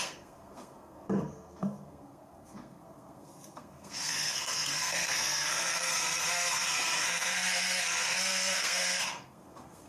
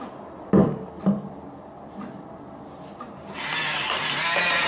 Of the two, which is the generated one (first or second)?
first